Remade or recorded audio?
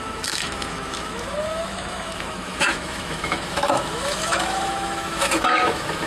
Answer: remade